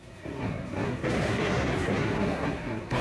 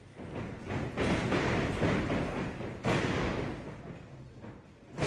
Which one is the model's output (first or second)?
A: first